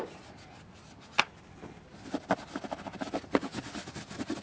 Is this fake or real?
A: real